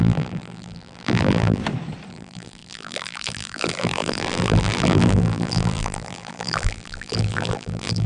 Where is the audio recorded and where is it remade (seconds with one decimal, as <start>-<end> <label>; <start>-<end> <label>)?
0.0-1.6 remade; 1.6-2.1 recorded; 2.1-8.1 remade